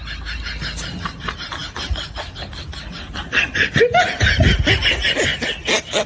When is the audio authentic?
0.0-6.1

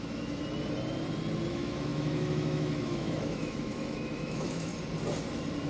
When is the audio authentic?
0.4-1.5; 4.7-5.7